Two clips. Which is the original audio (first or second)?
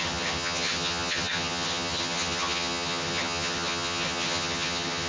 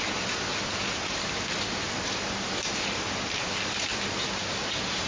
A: second